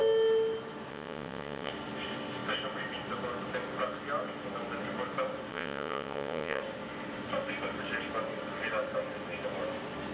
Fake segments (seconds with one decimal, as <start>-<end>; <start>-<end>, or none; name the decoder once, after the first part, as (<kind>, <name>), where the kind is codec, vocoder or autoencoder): 0.9-1.7 (vocoder, WaveNeXt); 5.5-6.6